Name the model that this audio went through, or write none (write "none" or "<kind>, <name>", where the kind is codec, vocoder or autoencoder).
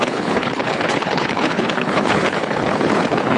codec, HILCodec